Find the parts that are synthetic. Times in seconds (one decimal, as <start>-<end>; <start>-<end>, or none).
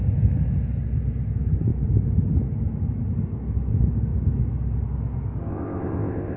5.5-6.4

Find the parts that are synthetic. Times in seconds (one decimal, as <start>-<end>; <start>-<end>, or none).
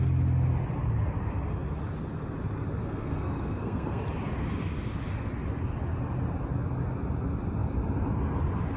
2.8-4.0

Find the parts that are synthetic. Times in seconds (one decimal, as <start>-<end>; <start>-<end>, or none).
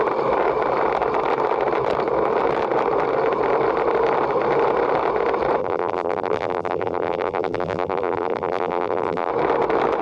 5.6-9.3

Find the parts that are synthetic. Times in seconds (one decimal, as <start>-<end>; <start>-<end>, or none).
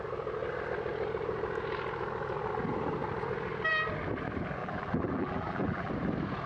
4.6-5.9